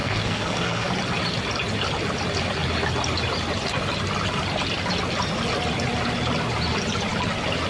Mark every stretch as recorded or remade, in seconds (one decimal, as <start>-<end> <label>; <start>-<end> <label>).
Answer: 0.0-0.9 remade; 0.9-7.7 recorded